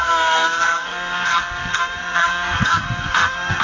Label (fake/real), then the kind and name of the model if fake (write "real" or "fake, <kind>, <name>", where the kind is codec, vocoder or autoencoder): fake, codec, SNAC